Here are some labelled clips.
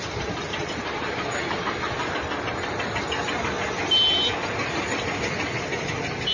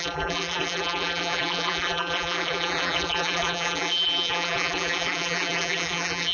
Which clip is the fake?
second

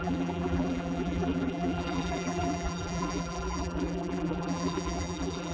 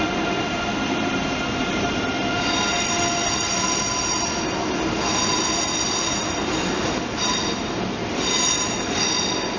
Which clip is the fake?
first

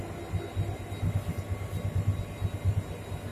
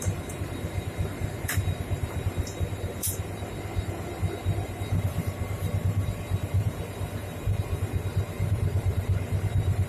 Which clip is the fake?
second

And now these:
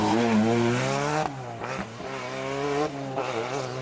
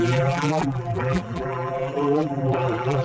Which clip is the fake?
second